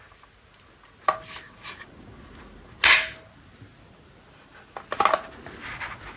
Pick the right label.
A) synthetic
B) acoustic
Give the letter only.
B